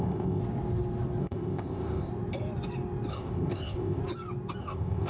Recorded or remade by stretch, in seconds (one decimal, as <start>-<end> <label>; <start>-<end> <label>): 0.0-0.4 remade; 0.4-1.2 recorded; 1.2-2.1 remade; 2.1-3.1 recorded; 3.1-4.0 remade; 4.0-4.6 recorded; 4.6-5.1 remade